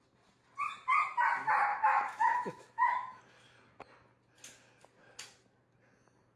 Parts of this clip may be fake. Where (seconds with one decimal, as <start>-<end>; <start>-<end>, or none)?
1.7-3.2